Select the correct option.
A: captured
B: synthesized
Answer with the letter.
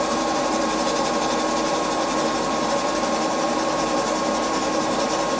B